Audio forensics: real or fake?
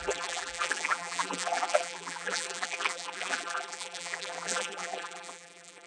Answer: fake